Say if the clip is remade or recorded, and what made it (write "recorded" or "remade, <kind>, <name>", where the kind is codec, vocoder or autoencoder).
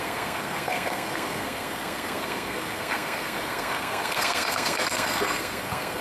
remade, codec, SNAC